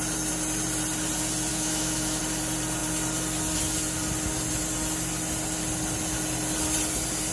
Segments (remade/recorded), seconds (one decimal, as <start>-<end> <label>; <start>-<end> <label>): 0.0-1.5 recorded; 1.5-2.2 remade; 2.2-7.3 recorded